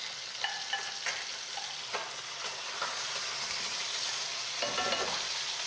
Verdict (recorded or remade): recorded